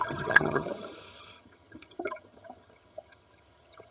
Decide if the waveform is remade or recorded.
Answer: remade